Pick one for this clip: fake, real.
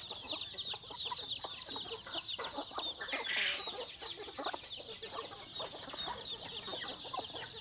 real